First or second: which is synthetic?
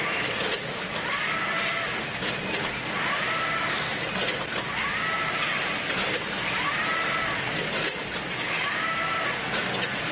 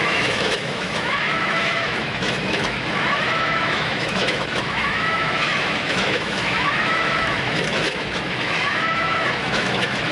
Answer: second